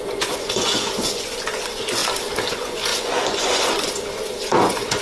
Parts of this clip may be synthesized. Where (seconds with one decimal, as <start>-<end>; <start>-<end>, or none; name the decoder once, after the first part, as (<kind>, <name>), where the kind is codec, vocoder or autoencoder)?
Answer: 0.0-2.0 (vocoder, Vocos); 2.5-5.0